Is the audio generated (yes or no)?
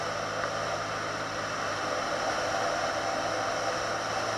no